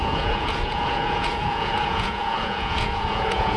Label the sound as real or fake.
fake